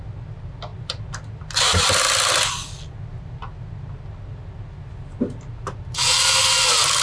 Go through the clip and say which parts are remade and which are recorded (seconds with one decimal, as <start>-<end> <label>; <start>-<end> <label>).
0.0-7.0 recorded

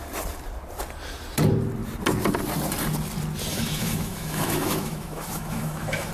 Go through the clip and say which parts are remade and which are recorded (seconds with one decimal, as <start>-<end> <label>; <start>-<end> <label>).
0.0-3.5 recorded; 3.5-6.1 remade

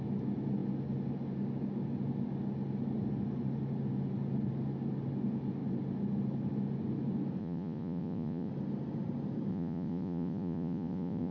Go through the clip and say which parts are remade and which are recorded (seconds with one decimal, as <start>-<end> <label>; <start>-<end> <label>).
0.0-7.4 recorded; 7.4-8.5 remade; 8.5-9.5 recorded; 9.5-11.3 remade

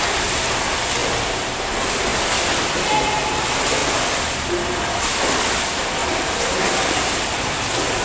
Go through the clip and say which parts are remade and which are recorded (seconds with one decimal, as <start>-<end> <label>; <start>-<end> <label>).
0.0-1.0 recorded; 1.0-1.7 remade; 1.7-6.0 recorded; 6.0-7.5 remade; 7.5-8.0 recorded

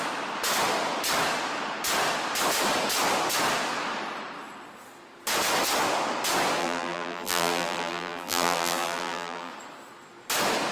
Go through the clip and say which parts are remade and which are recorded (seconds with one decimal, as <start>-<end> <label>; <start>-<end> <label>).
0.0-6.6 recorded; 6.6-9.5 remade; 9.5-10.7 recorded

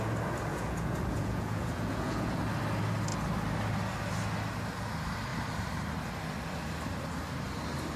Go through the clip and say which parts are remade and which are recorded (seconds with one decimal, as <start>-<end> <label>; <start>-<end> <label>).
0.0-0.5 recorded; 0.5-2.4 remade; 2.4-8.0 recorded

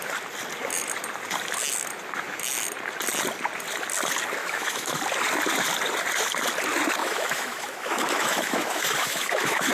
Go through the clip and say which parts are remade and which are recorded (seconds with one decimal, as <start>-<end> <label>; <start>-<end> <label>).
0.0-4.4 recorded; 4.4-5.0 remade; 5.0-7.0 recorded; 7.0-9.7 remade

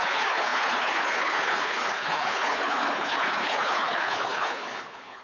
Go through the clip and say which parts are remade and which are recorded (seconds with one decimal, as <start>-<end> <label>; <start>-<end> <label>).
0.0-5.2 remade